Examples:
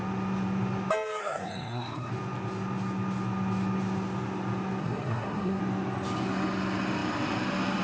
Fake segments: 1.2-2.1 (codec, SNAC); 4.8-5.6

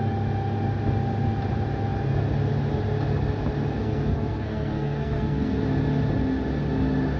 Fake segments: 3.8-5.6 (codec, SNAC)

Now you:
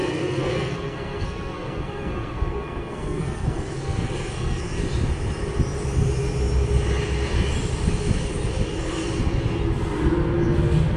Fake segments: 0.0-4.8 (codec, SNAC)

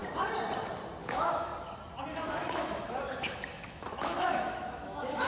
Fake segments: 1.0-1.5 (autoencoder, DAC-VAE); 2.1-5.3

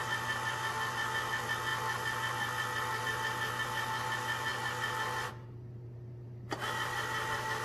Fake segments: none

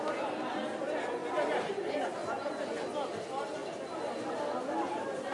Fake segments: none